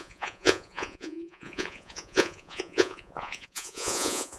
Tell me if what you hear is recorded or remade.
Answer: remade